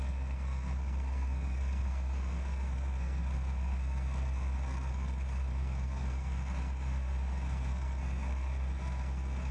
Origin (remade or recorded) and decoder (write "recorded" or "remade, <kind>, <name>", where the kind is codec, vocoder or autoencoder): remade, codec, SNAC